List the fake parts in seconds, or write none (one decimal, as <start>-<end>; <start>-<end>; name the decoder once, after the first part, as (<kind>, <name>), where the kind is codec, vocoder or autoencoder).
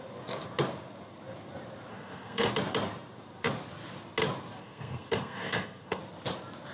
1.9-2.5 (codec, SNAC); 4.6-6.0